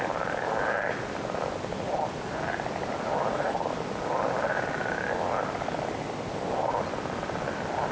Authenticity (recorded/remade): recorded